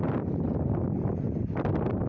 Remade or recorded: recorded